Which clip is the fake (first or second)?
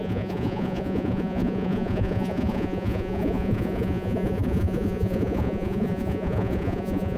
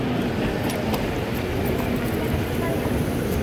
first